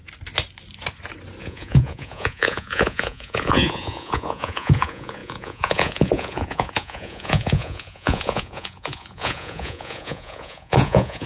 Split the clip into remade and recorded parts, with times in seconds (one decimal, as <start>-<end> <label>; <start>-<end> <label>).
0.0-1.4 recorded; 1.4-11.3 remade

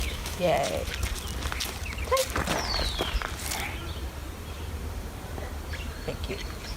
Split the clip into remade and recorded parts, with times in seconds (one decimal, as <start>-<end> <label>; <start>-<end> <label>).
0.0-0.5 remade; 0.5-6.8 recorded

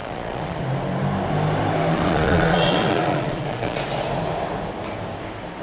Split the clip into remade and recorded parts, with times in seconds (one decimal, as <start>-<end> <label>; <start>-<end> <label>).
0.0-0.6 remade; 0.6-1.9 recorded; 1.9-3.8 remade; 3.8-5.6 recorded